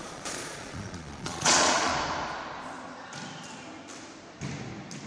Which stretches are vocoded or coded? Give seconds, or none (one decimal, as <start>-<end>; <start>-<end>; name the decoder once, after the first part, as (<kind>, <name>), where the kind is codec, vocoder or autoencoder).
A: 0.0-1.9 (vocoder, Vocos)